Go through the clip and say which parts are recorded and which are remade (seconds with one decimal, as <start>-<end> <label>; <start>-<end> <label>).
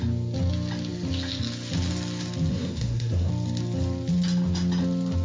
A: 0.0-2.5 recorded; 2.5-3.3 remade; 3.3-5.2 recorded